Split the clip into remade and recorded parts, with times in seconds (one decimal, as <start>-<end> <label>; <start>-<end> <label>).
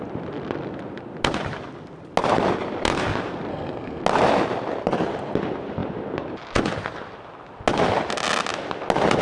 0.0-3.5 recorded; 3.5-4.0 remade; 4.0-9.2 recorded